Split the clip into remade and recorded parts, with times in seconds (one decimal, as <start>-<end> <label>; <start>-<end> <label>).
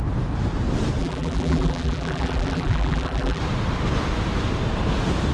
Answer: 0.0-1.0 recorded; 1.0-3.4 remade; 3.4-5.3 recorded